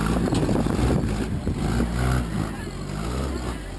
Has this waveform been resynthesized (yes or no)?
no